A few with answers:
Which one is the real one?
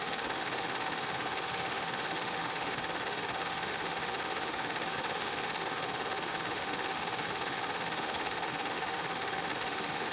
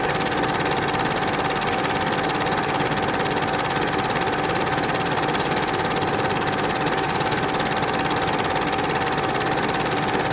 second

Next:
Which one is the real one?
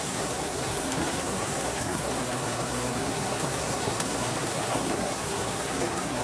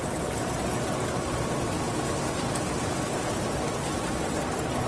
second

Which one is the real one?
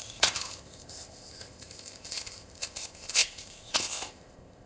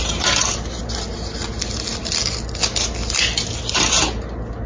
second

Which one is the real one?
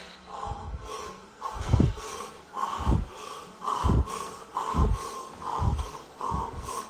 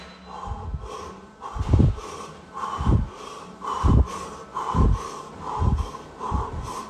second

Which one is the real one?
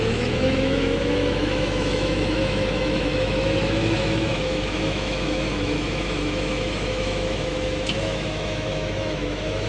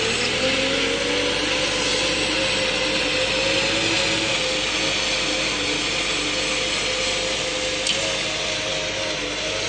second